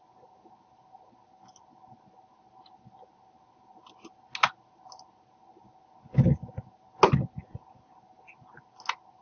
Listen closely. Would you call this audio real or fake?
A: real